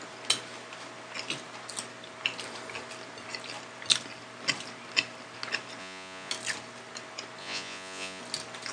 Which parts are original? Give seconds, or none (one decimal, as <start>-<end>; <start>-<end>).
0.0-5.8; 6.3-7.4; 8.2-8.7